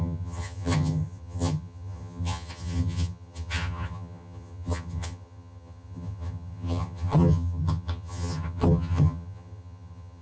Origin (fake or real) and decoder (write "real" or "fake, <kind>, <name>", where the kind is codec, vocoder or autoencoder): fake, vocoder, HiFi-GAN